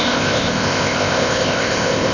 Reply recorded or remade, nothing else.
remade